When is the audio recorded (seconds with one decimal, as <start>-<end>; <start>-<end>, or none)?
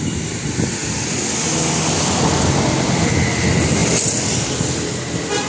0.0-5.5